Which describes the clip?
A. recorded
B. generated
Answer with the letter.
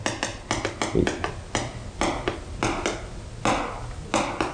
A